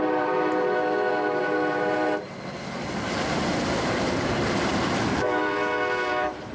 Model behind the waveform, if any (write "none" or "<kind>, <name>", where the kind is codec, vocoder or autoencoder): vocoder, BigVGAN v2